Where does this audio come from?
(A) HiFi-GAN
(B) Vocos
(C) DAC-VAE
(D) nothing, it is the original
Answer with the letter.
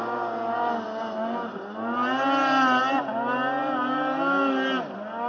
D